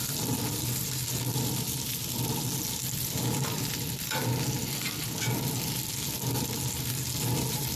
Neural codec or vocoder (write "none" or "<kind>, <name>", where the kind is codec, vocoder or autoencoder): none